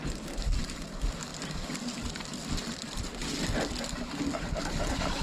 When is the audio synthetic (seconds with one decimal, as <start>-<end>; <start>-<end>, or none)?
none